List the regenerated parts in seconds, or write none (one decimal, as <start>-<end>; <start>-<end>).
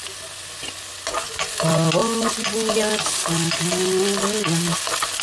none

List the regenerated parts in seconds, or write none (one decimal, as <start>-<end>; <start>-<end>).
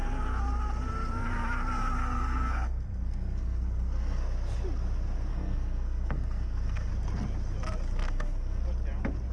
2.0-4.2; 5.3-6.9; 8.0-8.6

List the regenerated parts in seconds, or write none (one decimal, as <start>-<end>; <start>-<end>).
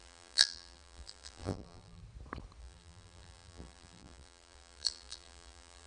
0.0-2.0; 2.6-5.9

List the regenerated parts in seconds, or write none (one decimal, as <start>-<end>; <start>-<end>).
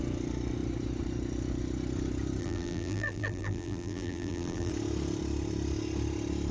2.4-4.7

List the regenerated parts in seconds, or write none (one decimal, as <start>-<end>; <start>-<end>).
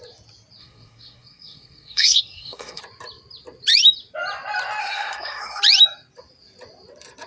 0.6-2.8; 4.8-5.6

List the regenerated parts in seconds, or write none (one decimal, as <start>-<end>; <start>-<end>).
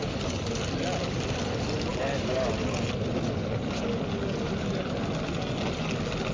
none